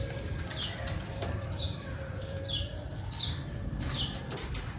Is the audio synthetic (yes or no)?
yes